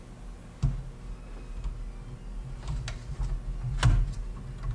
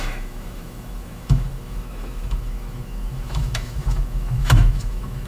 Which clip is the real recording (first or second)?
first